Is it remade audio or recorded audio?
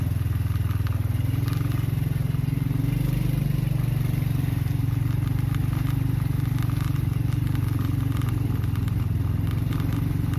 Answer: recorded